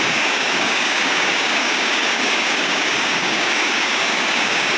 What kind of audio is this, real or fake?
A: fake